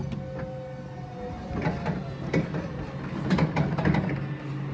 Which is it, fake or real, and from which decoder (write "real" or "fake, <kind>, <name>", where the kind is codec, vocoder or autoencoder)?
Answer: real